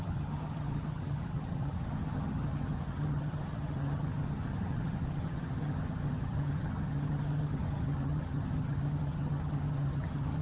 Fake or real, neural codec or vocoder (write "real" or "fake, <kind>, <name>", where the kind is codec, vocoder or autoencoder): fake, vocoder, HiFi-GAN